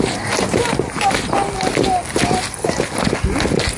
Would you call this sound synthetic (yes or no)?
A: no